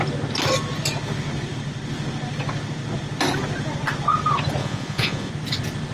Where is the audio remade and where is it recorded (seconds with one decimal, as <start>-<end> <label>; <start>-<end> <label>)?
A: 0.0-4.6 recorded; 4.6-5.3 remade; 5.3-5.9 recorded